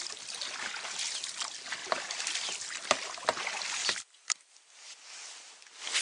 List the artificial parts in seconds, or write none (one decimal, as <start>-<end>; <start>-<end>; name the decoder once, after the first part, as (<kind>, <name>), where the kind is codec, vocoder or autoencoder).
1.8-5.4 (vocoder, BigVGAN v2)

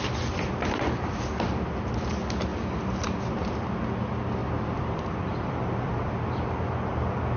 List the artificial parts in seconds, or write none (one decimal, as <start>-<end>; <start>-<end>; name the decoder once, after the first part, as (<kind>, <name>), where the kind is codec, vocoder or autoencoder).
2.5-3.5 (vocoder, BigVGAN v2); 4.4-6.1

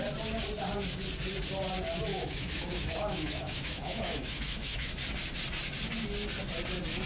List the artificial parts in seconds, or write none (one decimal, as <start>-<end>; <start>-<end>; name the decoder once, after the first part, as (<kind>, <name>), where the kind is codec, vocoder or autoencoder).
2.1-4.9 (autoencoder, DAC-VAE)